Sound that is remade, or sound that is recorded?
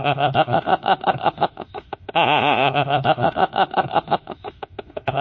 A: remade